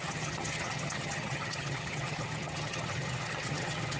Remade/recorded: remade